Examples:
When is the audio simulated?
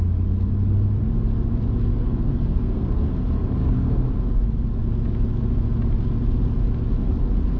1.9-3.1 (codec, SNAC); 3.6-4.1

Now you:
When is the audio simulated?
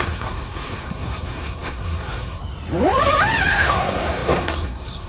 0.0-2.4 (codec, SNAC); 3.5-5.1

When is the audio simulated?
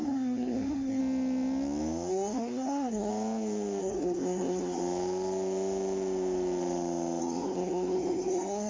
0.0-1.0 (codec, SNAC); 2.1-3.1; 3.8-4.8; 7.2-8.7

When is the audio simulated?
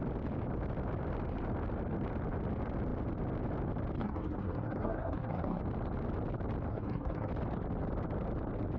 4.0-5.6 (codec, SNAC); 6.7-7.3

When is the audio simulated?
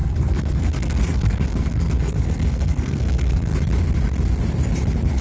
0.0-3.5 (codec, SNAC)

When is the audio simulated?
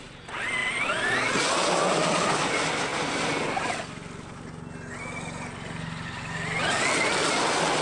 none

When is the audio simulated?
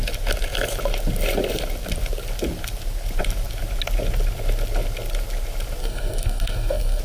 5.8-7.0 (codec, SNAC)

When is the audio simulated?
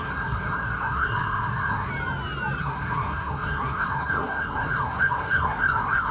0.0-1.9 (codec, SNAC); 2.6-6.1